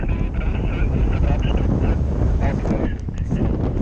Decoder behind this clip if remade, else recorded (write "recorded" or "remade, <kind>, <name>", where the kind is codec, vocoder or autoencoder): recorded